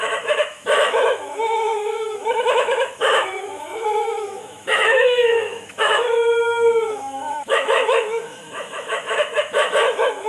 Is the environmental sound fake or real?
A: fake